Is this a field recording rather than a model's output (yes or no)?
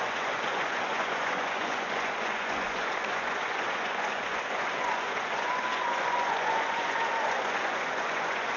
no